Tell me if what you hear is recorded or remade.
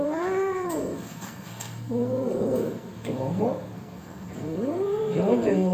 remade